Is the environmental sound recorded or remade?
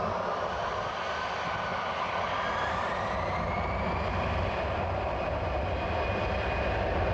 recorded